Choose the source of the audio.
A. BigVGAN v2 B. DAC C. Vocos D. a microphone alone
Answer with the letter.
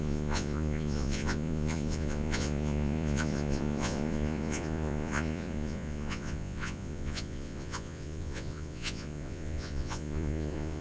C